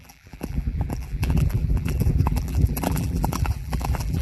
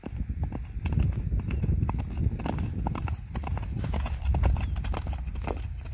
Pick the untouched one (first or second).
second